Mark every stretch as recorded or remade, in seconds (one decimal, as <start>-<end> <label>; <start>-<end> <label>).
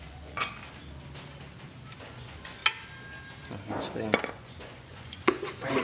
0.0-0.6 remade; 0.6-2.0 recorded; 2.0-2.6 remade; 2.6-4.3 recorded; 4.3-5.8 remade